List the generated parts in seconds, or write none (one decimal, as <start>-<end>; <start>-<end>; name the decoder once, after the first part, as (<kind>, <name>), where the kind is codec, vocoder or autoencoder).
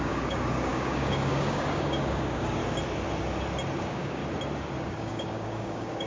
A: 0.0-2.6 (codec, DAC); 3.8-4.2; 4.9-6.1